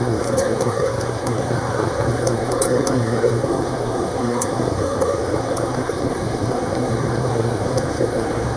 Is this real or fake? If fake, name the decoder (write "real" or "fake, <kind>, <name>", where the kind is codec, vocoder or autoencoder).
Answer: fake, codec, SNAC